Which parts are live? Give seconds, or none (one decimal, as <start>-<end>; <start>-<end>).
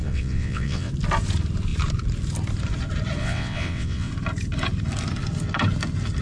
0.9-3.2; 4.1-6.2